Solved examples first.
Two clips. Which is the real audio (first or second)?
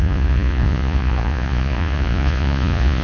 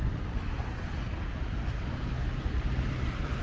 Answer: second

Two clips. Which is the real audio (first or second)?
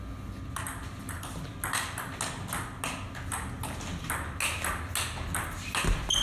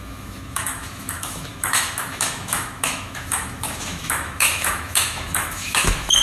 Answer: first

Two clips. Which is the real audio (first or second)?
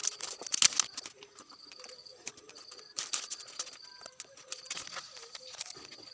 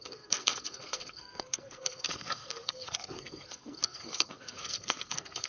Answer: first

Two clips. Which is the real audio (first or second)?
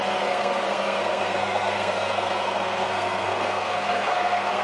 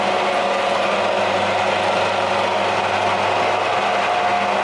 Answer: second